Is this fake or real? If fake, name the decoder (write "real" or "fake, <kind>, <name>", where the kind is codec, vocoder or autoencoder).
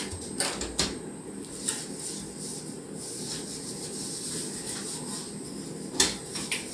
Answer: real